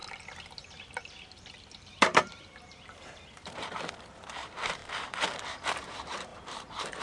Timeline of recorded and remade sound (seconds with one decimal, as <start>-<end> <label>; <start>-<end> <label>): 0.0-1.4 recorded; 1.4-4.8 remade; 4.8-5.4 recorded; 5.4-7.0 remade